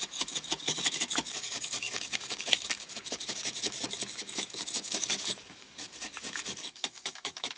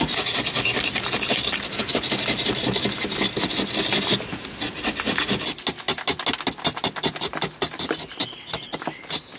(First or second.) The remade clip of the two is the first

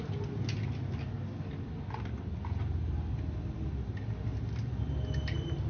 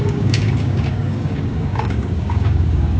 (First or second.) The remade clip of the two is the second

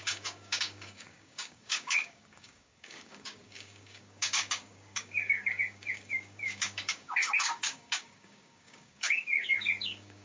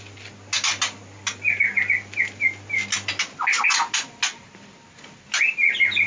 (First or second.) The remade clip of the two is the first